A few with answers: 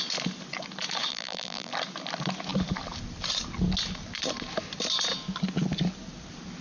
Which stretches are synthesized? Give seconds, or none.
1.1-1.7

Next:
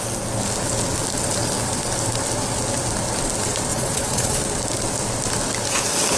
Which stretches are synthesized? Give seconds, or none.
3.7-4.4

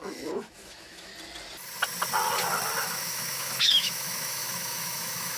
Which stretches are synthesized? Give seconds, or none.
0.0-1.1; 2.8-5.4

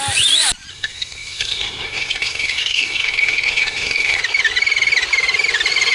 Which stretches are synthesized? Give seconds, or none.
0.7-4.2

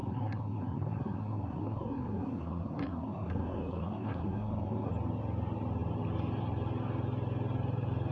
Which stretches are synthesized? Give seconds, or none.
0.0-4.9

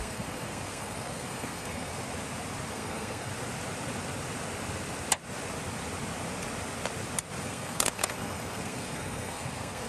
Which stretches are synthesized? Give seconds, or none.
0.0-1.9; 2.7-3.3; 7.4-9.9